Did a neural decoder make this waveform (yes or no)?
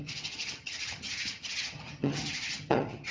yes